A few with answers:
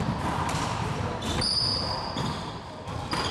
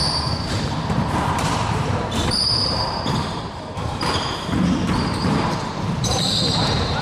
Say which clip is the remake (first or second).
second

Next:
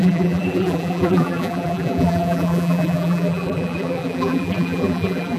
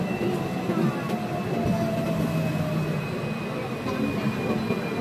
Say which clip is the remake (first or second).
first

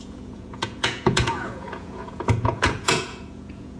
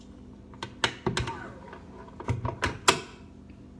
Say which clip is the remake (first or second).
first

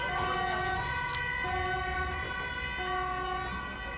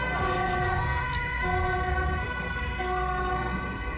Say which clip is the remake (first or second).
second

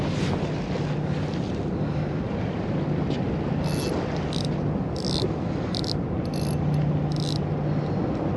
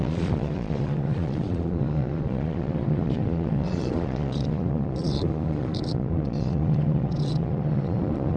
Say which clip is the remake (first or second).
second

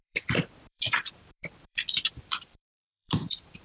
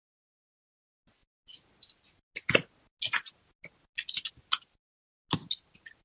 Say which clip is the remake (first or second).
first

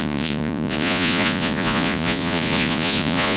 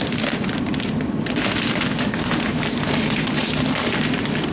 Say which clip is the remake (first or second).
first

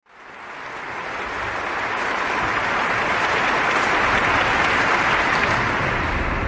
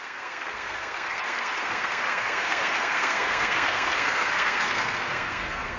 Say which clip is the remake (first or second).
second